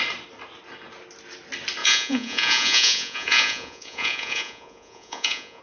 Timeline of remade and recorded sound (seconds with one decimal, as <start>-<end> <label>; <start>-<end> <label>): 0.0-1.8 recorded; 1.8-5.6 remade